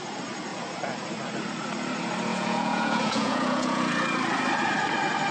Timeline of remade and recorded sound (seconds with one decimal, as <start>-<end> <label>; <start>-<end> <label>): 0.0-2.3 recorded; 2.3-3.9 remade; 3.9-5.3 recorded